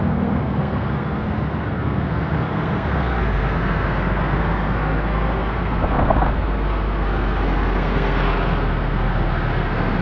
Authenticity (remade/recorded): remade